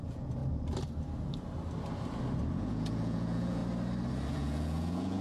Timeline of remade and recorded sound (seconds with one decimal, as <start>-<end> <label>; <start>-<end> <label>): 0.0-0.4 remade; 0.4-2.5 recorded; 2.5-3.6 remade; 3.6-4.3 recorded; 4.3-5.2 remade